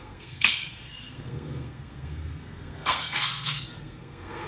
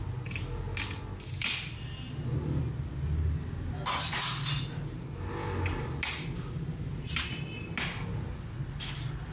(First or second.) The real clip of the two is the second